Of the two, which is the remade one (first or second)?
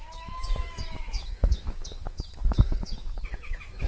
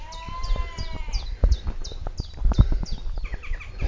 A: first